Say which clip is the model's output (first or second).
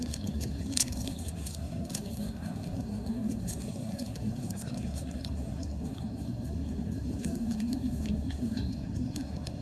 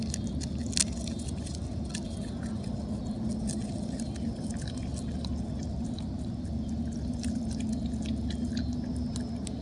first